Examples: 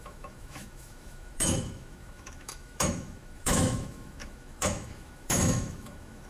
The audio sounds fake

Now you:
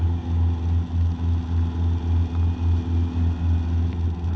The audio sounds real